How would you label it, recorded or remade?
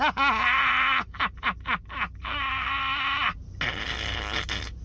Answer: recorded